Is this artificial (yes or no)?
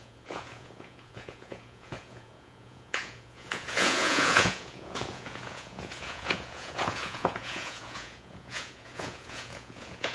yes